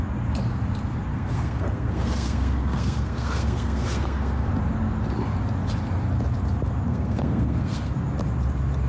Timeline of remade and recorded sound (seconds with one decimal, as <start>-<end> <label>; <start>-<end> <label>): 0.0-1.1 recorded; 1.1-4.5 remade; 4.5-6.9 recorded; 6.9-7.9 remade; 7.9-8.9 recorded

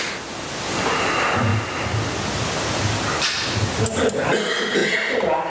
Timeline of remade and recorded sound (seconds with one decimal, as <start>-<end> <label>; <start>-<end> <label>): 0.0-5.5 recorded

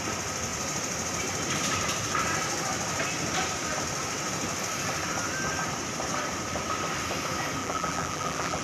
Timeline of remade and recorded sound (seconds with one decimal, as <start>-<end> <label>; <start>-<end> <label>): 0.0-7.6 recorded; 7.6-8.6 remade

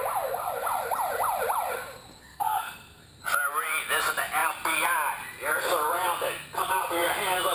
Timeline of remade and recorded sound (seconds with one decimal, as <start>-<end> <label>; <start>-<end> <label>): 0.0-2.2 recorded; 2.2-3.2 remade; 3.2-7.5 recorded

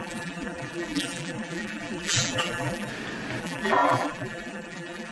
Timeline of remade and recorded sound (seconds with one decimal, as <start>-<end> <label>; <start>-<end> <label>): 0.0-2.9 remade; 2.9-3.4 recorded; 3.4-5.1 remade

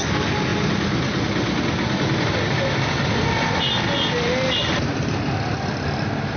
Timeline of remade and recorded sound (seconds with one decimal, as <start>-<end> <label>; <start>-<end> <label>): 0.0-6.4 recorded